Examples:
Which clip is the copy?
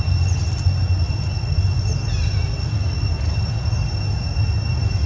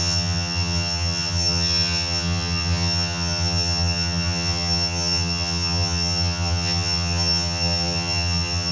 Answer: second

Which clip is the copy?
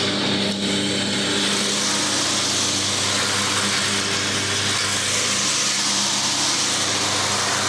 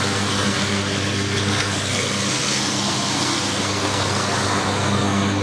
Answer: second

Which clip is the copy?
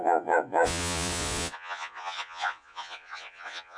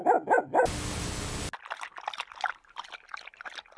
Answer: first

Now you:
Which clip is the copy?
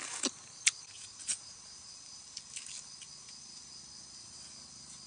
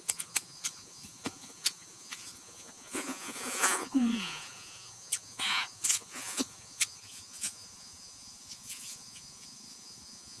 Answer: second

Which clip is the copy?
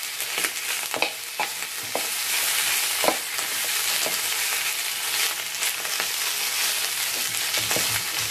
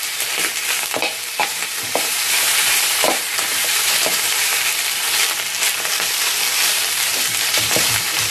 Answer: second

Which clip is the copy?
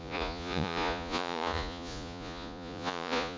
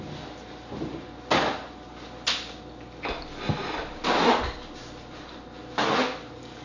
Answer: first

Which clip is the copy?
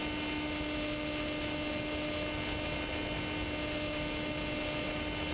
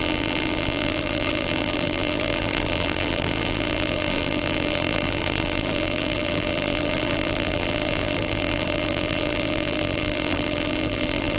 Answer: second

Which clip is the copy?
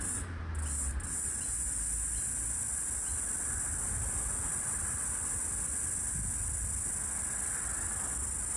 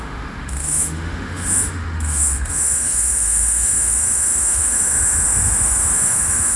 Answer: second